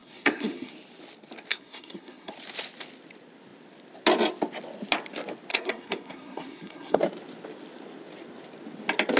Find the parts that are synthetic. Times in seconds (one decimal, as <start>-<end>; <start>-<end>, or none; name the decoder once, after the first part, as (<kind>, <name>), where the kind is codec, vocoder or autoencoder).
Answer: 0.0-0.7 (codec, SNAC); 1.5-2.3; 5.5-7.0